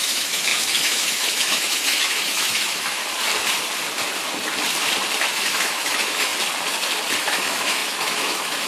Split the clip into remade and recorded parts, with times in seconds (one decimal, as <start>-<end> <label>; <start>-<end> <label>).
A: 0.0-3.0 remade; 3.0-5.3 recorded; 5.3-6.3 remade; 6.3-7.2 recorded; 7.2-8.7 remade